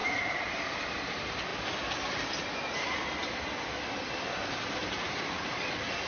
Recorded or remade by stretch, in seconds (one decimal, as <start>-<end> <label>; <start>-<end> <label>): 0.0-1.0 remade; 1.0-4.8 recorded; 4.8-5.6 remade; 5.6-6.1 recorded